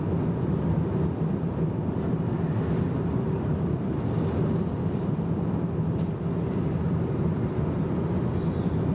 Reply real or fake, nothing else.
real